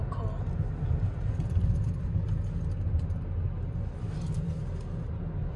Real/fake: real